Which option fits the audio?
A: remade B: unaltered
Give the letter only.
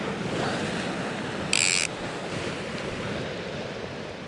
B